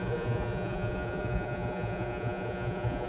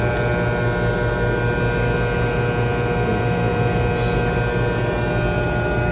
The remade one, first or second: first